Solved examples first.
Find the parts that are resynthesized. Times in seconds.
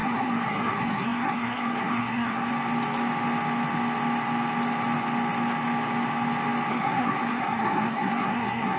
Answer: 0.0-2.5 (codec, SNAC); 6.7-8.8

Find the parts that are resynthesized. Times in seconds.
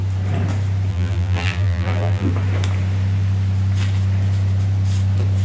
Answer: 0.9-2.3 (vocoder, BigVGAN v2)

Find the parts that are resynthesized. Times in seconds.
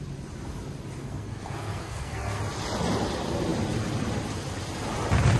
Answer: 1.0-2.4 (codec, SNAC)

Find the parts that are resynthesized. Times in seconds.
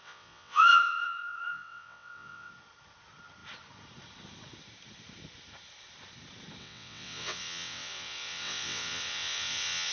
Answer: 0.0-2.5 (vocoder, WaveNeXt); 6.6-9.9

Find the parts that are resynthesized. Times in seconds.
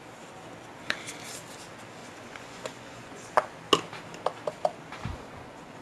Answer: 2.0-3.3 (vocoder, Vocos); 5.1-5.8